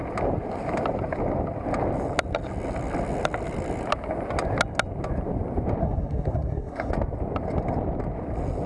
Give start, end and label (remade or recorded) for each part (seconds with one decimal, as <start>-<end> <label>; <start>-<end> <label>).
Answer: 0.0-5.8 recorded; 5.8-6.9 remade; 6.9-8.7 recorded